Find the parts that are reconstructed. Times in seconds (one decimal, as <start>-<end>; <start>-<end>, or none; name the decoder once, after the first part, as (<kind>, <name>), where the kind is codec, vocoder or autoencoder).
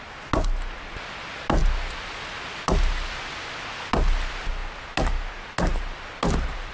none